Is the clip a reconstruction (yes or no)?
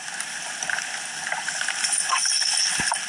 yes